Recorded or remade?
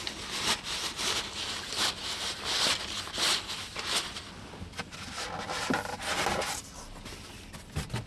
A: recorded